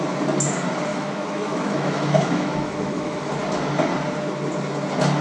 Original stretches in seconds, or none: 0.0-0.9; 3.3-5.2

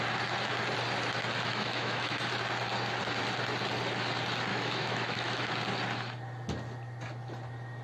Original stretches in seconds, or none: 0.0-1.5; 2.3-4.5; 5.5-7.8

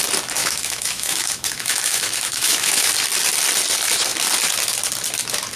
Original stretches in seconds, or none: 0.0-0.4; 2.9-5.6

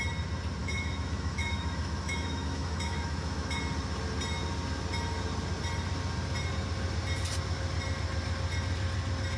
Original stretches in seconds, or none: 0.0-0.6; 3.6-9.4